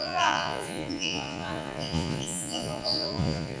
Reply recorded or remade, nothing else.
remade